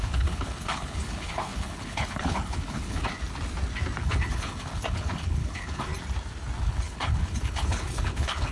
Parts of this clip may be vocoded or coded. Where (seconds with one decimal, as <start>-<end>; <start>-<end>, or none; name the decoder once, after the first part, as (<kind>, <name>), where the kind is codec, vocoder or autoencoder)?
0.0-3.1 (codec, HILCodec); 4.0-5.9; 6.6-8.5

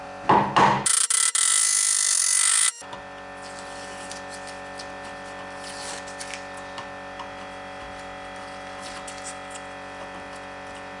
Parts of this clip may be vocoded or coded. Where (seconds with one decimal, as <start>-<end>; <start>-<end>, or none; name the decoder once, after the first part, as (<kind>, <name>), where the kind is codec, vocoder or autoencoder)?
none

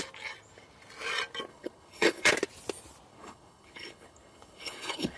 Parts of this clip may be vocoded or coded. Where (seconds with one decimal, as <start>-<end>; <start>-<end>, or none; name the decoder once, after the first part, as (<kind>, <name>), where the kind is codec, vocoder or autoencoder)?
1.5-2.3 (codec, HILCodec); 3.1-5.2

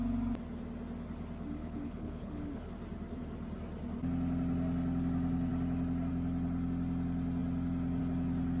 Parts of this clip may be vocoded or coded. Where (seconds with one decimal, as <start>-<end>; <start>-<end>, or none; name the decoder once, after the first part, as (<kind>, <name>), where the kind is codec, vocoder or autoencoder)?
1.6-2.7 (codec, HILCodec)

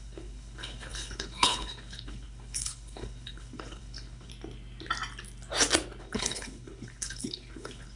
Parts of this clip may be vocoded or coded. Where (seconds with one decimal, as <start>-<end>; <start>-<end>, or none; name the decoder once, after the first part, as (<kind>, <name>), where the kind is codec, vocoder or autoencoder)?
0.0-4.3 (codec, HILCodec); 6.0-8.0

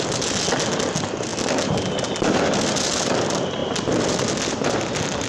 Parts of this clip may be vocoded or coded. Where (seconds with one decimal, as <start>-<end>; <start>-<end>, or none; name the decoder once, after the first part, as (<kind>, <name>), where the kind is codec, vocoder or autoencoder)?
none